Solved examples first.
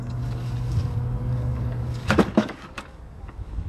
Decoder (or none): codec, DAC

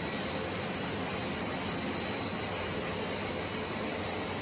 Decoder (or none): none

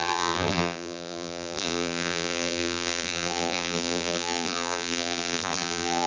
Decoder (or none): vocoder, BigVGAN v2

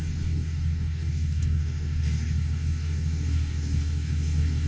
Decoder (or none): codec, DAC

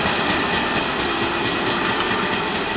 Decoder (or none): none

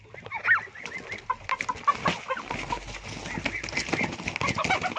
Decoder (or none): none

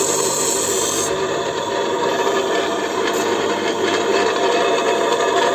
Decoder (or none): vocoder, BigVGAN v2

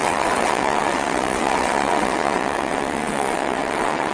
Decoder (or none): vocoder, WaveNeXt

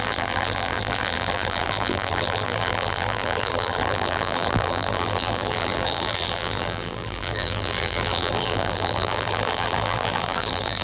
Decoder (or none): vocoder, BigVGAN v2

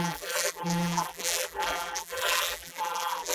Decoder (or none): vocoder, BigVGAN v2